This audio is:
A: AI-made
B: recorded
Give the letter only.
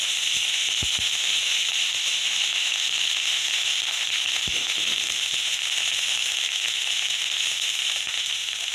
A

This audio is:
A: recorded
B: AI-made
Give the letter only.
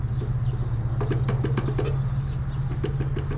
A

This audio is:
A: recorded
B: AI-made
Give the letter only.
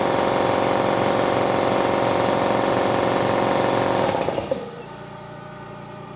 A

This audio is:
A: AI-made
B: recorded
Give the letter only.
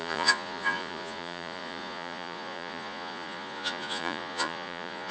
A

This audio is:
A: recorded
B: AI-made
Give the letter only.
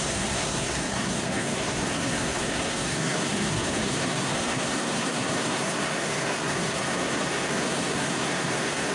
B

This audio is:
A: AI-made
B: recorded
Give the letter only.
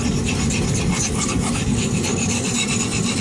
B